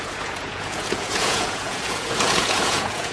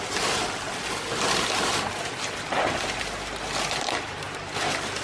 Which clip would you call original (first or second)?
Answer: second